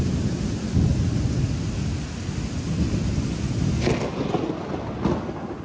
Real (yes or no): yes